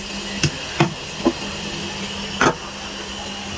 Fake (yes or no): no